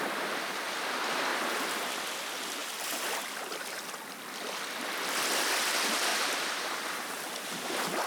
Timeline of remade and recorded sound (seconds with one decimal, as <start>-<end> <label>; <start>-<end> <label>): 0.0-1.3 recorded; 1.3-1.9 remade; 1.9-2.6 recorded; 2.6-3.2 remade; 3.2-6.1 recorded; 6.1-7.1 remade; 7.1-8.1 recorded